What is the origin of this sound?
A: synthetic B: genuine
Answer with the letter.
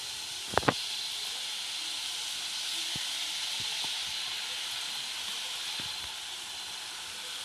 B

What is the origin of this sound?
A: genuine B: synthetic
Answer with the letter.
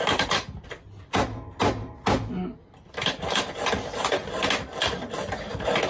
A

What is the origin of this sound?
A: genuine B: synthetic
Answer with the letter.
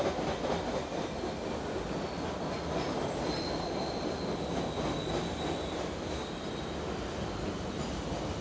A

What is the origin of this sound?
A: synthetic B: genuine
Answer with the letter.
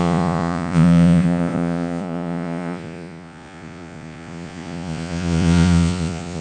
A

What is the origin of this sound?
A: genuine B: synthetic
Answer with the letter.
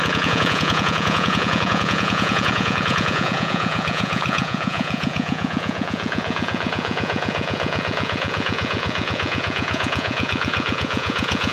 B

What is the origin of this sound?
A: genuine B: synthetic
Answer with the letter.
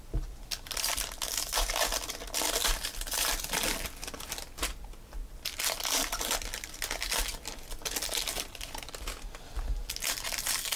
A